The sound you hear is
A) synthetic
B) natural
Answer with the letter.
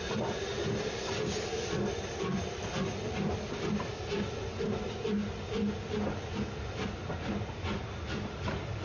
B